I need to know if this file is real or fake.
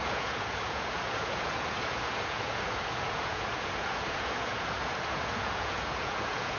fake